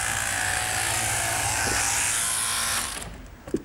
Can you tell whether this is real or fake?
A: real